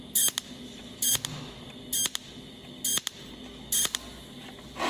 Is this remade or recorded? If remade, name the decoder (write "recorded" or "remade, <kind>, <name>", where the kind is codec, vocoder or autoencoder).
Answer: recorded